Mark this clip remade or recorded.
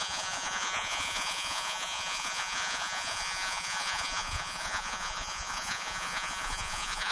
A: remade